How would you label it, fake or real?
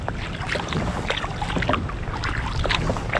real